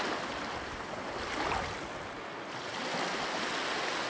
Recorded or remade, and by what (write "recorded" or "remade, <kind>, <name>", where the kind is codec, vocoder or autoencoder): recorded